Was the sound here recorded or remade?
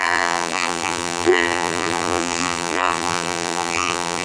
remade